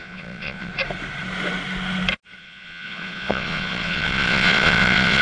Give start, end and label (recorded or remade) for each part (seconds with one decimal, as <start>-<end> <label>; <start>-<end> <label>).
0.0-0.7 remade; 0.7-2.4 recorded; 2.4-5.2 remade